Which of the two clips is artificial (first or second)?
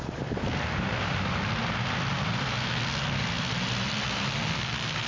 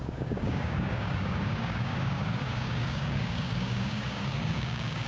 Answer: second